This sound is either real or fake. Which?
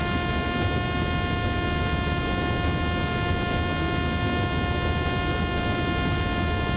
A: real